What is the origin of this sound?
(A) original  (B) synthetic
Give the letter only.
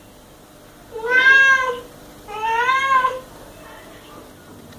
A